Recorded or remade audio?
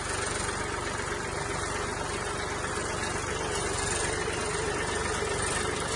recorded